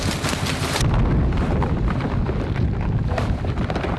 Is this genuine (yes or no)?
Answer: yes